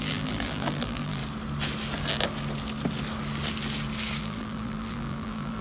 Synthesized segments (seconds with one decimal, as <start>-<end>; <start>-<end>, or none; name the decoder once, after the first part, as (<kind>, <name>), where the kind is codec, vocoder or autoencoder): 0.0-1.2 (vocoder, BigVGAN v2); 4.2-5.6